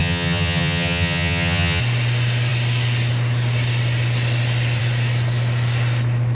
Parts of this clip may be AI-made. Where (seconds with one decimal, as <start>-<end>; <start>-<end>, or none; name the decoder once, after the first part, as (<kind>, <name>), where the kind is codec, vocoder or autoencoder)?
0.0-1.8 (vocoder, HiFi-GAN)